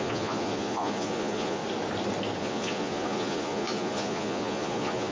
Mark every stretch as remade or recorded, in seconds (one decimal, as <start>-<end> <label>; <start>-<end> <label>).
0.0-1.6 remade; 1.6-2.4 recorded; 2.4-5.1 remade